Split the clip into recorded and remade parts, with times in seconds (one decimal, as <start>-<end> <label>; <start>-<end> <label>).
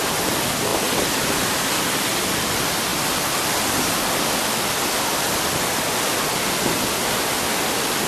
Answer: 0.0-8.1 recorded